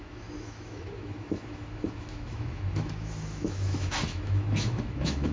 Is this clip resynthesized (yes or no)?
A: yes